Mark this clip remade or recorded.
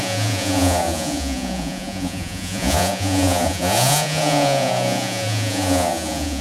remade